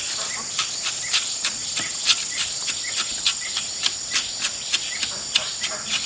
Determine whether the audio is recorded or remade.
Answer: recorded